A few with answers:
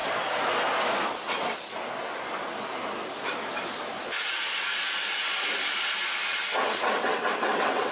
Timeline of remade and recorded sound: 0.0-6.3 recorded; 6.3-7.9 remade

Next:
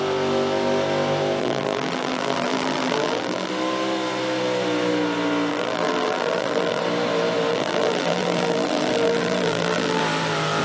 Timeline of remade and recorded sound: 0.0-1.4 recorded; 1.4-3.5 remade; 3.5-5.5 recorded; 5.5-6.8 remade; 6.8-7.5 recorded; 7.5-10.0 remade; 10.0-10.6 recorded

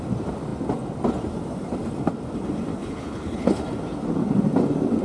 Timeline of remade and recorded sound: 0.0-2.7 recorded; 2.7-3.6 remade; 3.6-5.0 recorded

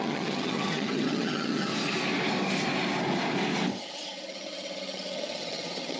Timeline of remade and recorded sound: 0.0-1.7 remade; 1.7-3.8 recorded; 3.8-6.0 remade

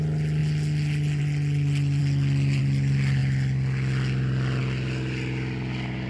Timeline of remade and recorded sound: 0.0-6.1 recorded

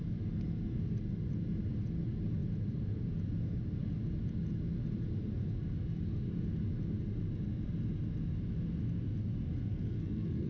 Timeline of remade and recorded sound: 0.0-9.7 recorded; 9.7-10.5 remade

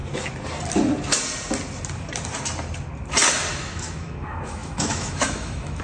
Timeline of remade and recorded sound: 0.0-3.5 recorded; 3.5-5.8 remade